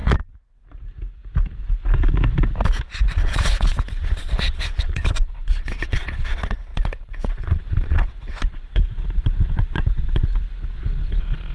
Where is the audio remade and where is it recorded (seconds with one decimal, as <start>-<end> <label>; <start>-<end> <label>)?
0.0-3.1 recorded; 3.1-11.5 remade